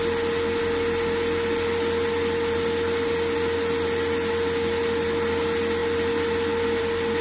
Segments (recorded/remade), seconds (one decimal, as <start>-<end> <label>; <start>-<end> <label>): 0.0-7.2 recorded